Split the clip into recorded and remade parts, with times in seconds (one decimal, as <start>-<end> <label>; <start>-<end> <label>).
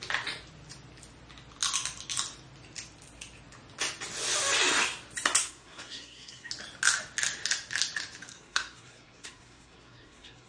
0.0-5.4 recorded; 5.4-6.5 remade; 6.5-8.3 recorded; 8.3-10.5 remade